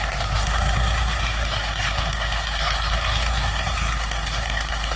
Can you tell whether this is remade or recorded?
remade